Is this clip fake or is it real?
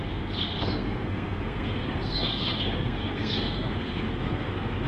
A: fake